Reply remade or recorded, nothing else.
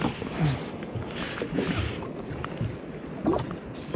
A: recorded